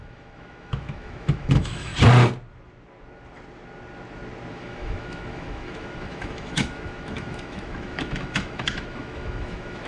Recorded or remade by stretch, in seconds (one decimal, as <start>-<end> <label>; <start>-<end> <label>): 0.0-1.9 remade; 1.9-4.5 recorded; 4.5-9.9 remade